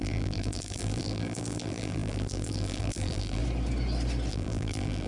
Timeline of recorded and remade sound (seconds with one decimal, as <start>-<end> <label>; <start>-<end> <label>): 0.0-3.4 remade; 3.4-4.3 recorded; 4.3-5.1 remade